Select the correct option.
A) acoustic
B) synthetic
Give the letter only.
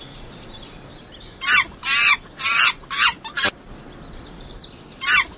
A